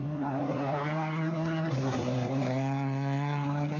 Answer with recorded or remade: remade